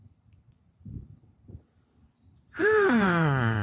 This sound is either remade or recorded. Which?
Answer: remade